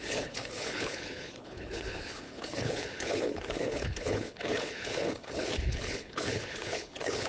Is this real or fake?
fake